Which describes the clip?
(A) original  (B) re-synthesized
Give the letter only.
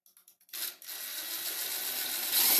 A